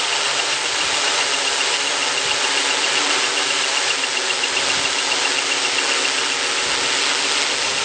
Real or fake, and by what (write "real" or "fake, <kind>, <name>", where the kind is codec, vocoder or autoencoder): real